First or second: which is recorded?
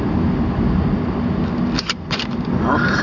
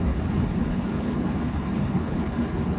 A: first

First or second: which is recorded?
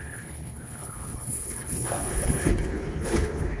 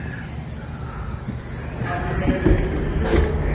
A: second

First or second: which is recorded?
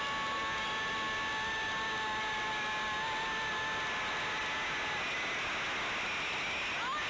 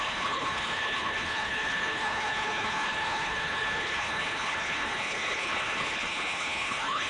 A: first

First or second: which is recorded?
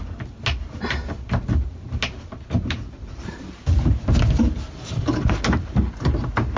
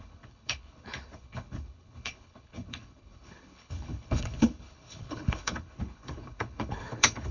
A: first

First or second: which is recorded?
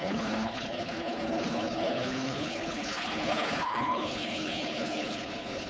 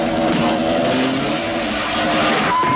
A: second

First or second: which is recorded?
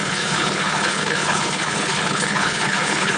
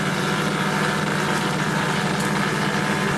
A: second